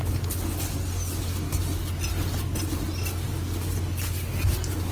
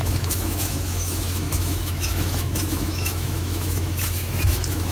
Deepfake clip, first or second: second